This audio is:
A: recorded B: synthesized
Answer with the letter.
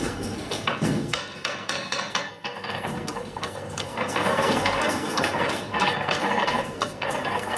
B